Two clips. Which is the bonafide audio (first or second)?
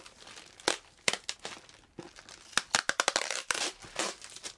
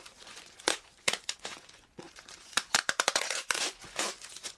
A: first